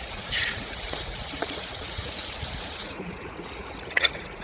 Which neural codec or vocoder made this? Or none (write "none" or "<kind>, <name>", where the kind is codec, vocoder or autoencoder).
vocoder, Vocos